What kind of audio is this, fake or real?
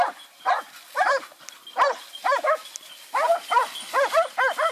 real